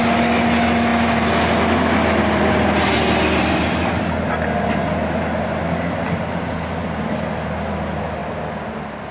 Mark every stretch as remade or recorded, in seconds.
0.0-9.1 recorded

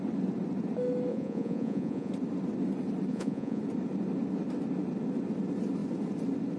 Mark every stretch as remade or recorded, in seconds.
0.0-1.1 recorded; 1.1-2.1 remade; 2.1-3.1 recorded; 3.1-3.6 remade; 3.6-6.6 recorded